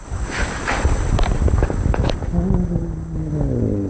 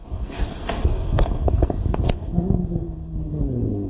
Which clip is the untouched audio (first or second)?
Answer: first